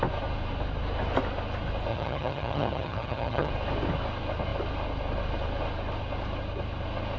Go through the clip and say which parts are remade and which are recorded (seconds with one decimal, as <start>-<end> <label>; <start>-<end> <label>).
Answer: 0.0-1.9 recorded; 1.9-3.5 remade; 3.5-7.2 recorded